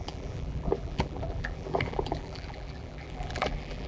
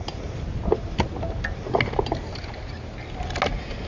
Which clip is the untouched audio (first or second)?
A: second